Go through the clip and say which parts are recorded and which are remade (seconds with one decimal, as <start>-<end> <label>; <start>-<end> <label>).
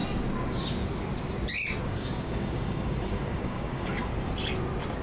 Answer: 0.0-1.8 recorded; 1.8-4.1 remade; 4.1-5.0 recorded